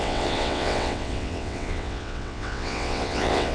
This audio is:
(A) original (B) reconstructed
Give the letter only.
B